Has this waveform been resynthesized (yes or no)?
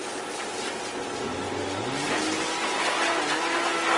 no